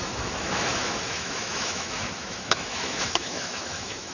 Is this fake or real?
fake